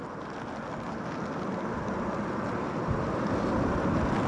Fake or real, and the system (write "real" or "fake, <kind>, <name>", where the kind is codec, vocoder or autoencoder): real